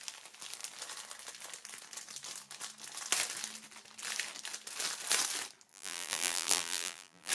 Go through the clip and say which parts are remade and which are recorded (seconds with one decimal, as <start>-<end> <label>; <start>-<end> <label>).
0.0-5.7 recorded; 5.7-7.3 remade